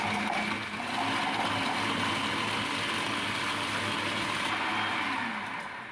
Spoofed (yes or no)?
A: no